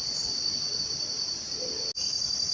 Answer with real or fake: real